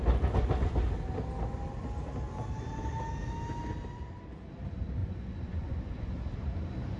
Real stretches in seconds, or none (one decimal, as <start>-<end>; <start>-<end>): 0.0-5.0; 6.1-7.0